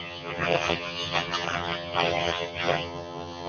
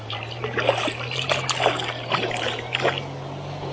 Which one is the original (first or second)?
second